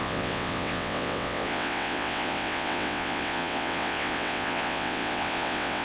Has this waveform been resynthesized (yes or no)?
yes